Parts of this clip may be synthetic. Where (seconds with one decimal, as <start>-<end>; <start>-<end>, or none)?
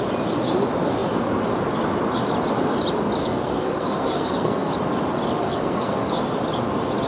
3.2-4.7; 5.4-6.2